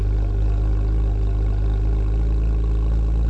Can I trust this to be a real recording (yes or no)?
yes